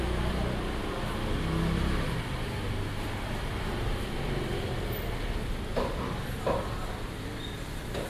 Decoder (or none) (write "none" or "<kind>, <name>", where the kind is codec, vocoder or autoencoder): none